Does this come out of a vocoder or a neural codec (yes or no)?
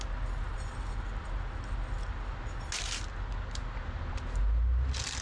no